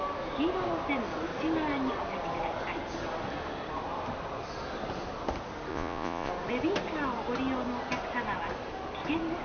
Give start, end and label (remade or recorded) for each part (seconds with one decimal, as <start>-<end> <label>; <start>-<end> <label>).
0.0-5.7 recorded; 5.7-6.3 remade; 6.3-9.4 recorded